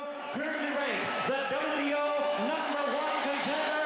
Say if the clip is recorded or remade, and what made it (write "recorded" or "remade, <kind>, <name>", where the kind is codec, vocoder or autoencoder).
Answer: remade, autoencoder, DAC-VAE